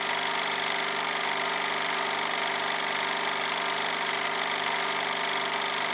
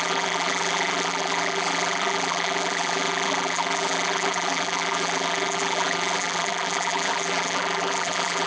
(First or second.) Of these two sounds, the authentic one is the first